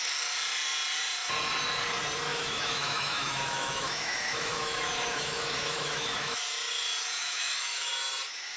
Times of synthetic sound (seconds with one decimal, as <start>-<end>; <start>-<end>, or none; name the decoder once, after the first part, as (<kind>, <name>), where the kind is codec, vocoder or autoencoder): 2.3-6.4 (autoencoder, DAC-VAE); 7.2-7.9